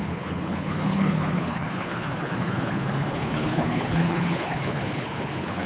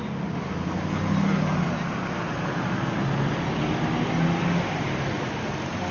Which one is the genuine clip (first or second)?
second